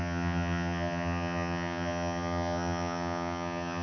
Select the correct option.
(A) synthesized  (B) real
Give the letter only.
A